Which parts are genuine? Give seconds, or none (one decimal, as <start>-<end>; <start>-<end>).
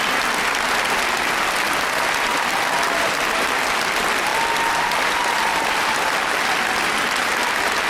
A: 0.0-7.9